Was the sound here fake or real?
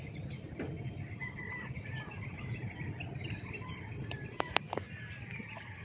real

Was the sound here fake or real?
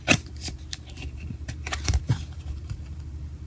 fake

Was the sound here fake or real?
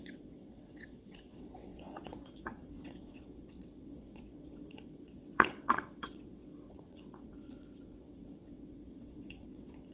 fake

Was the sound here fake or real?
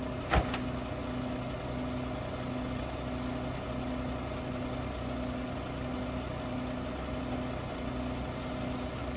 real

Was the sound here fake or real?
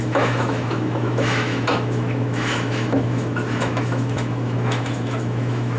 fake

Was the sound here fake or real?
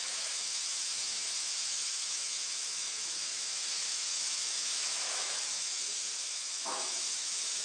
fake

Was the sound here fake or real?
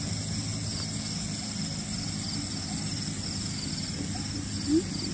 real